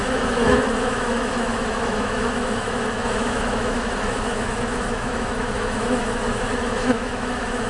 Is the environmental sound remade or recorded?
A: remade